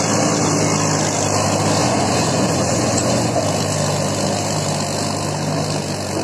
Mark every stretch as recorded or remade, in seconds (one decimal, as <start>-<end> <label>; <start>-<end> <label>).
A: 0.0-1.8 recorded; 1.8-3.4 remade; 3.4-6.2 recorded